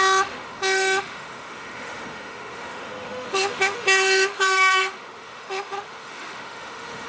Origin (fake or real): fake